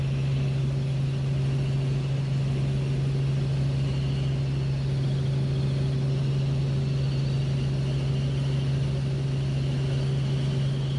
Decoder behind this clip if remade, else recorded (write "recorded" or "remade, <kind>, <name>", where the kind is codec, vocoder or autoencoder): recorded